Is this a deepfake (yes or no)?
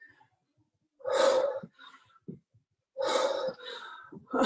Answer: no